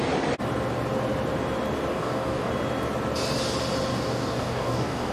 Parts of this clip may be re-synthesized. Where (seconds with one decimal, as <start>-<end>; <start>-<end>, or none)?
1.9-2.5; 3.9-5.1